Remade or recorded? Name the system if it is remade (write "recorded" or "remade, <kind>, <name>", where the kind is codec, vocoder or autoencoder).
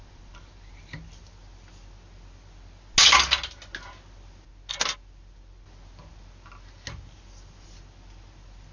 recorded